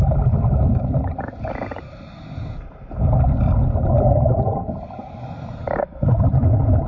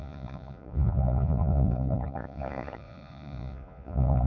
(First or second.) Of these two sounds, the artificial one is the second